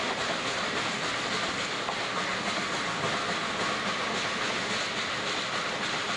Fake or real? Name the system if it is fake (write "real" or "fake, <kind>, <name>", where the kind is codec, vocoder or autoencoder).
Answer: real